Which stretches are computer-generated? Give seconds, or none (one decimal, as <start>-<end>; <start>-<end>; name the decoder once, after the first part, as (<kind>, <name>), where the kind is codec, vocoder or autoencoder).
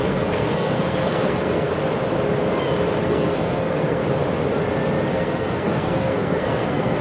0.0-1.7 (codec, SNAC); 3.0-4.0; 5.1-7.0